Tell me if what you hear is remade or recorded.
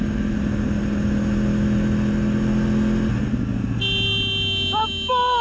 recorded